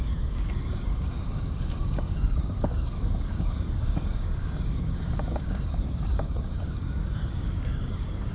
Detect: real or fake fake